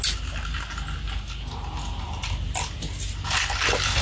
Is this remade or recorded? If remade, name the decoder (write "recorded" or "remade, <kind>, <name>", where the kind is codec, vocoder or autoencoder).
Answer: recorded